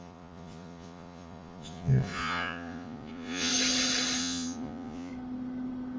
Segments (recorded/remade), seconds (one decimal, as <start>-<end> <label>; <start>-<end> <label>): 0.0-3.5 remade; 3.5-4.2 recorded; 4.2-5.1 remade; 5.1-6.0 recorded